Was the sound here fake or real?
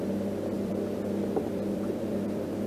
fake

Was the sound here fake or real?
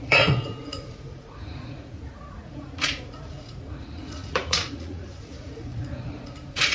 fake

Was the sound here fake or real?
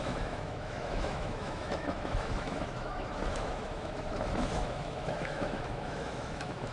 fake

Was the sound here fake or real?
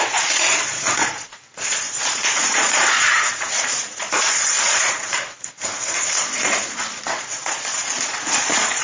fake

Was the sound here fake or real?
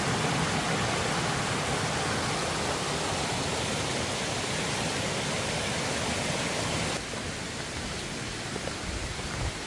real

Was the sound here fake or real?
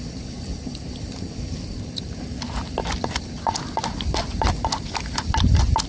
real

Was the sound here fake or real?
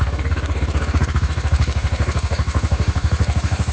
fake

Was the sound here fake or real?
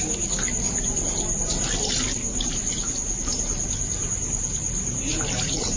real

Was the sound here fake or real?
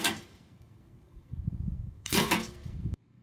fake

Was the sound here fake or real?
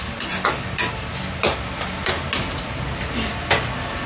real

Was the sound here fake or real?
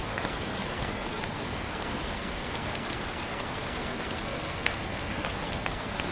fake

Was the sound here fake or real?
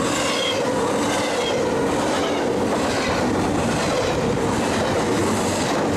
real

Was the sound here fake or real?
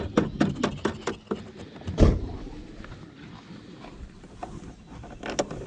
real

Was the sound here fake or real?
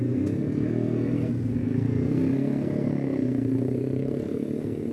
fake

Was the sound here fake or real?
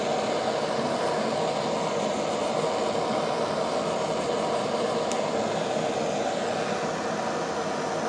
real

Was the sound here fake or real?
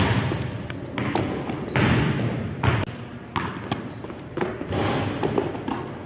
real